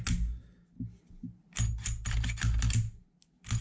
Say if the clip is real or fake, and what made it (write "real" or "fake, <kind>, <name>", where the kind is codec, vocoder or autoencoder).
real